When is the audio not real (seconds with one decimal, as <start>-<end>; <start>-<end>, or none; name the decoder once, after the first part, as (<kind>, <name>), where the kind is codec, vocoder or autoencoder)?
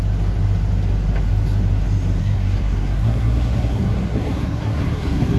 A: 2.2-5.4 (codec, SNAC)